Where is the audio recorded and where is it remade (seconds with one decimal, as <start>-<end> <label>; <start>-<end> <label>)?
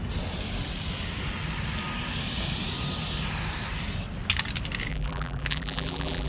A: 0.0-4.9 recorded; 4.9-6.3 remade